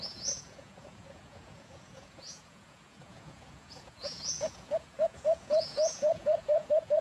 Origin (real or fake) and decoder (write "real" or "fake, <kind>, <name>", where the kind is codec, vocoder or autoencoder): fake, vocoder, Vocos